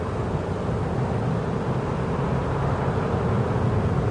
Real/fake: real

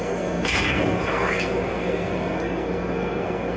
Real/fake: fake